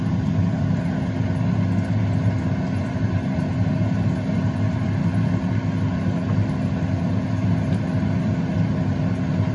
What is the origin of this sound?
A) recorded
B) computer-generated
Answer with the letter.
A